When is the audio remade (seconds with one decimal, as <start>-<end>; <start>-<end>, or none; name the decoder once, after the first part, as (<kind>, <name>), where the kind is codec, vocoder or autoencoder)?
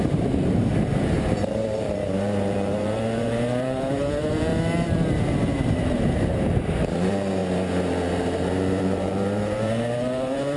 0.0-4.5 (vocoder, BigVGAN v2); 5.5-7.4; 8.1-10.6